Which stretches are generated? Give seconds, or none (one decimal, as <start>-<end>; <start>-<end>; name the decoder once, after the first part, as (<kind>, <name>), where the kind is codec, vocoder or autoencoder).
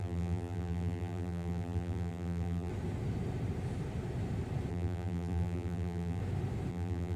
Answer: 0.0-2.7 (vocoder, BigVGAN v2); 4.7-6.2; 6.7-7.2